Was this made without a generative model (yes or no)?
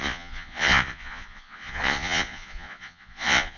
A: no